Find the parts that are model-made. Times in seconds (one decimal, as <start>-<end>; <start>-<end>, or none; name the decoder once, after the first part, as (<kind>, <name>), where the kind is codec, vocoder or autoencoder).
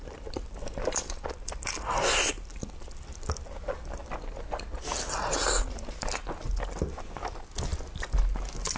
none